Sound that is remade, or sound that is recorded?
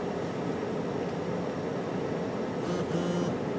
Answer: recorded